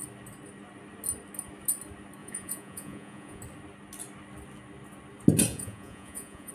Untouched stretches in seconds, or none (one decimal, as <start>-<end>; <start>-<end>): 0.0-2.2; 3.4-5.5